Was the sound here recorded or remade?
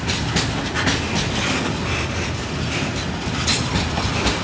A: recorded